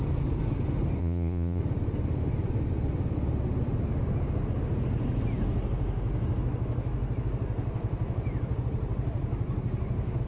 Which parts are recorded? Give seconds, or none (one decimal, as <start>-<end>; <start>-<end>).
0.0-1.0; 1.6-10.3